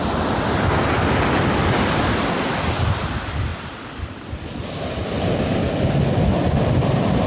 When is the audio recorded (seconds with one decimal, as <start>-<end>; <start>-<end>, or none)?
0.0-7.3